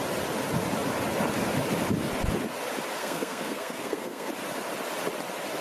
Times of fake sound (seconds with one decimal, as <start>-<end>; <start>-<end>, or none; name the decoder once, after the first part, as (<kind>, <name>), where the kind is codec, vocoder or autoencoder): 3.0-4.3 (codec, SNAC)